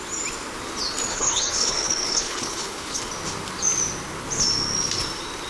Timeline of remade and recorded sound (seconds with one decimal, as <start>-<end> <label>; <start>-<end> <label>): 0.0-1.1 recorded; 1.1-3.0 remade; 3.0-5.5 recorded